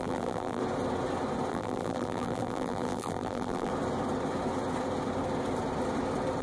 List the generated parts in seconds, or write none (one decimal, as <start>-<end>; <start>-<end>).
0.0-0.6; 1.5-3.7